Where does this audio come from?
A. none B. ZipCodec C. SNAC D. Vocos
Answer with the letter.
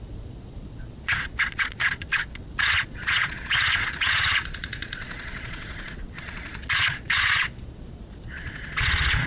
D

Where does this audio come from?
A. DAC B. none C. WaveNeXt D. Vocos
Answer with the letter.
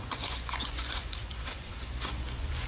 D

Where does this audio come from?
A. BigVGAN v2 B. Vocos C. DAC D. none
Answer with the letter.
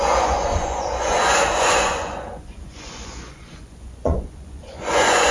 B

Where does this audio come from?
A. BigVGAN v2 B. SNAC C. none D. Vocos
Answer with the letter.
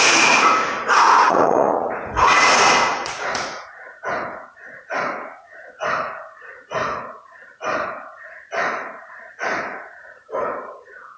D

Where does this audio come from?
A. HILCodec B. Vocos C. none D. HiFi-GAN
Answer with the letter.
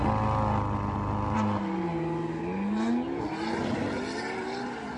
C